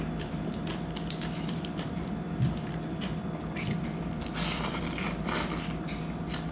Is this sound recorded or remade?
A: remade